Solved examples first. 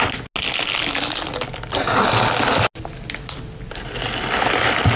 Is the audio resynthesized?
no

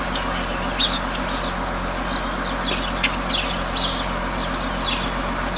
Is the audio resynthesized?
no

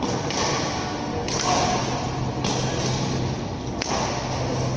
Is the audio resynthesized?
no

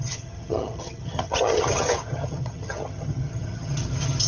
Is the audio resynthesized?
yes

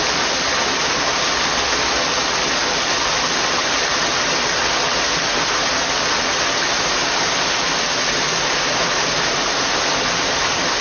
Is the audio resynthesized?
no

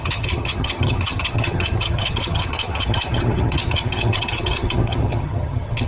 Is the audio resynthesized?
yes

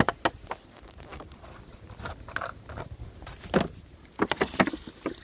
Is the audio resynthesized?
no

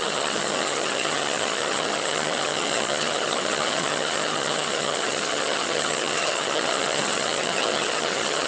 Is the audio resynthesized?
yes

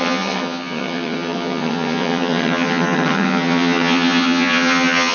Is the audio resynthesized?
yes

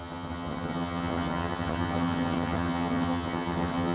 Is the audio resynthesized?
yes